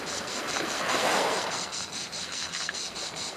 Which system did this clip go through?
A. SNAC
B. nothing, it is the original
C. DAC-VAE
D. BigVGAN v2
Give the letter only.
A